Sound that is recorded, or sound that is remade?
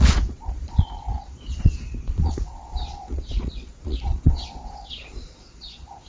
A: remade